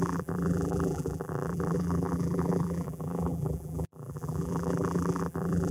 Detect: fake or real fake